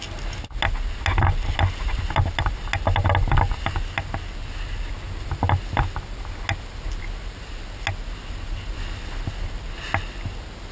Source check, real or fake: real